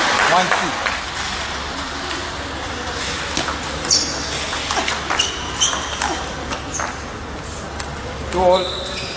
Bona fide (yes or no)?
yes